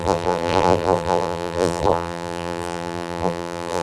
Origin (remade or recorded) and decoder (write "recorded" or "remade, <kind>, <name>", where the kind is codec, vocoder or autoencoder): remade, vocoder, BigVGAN v2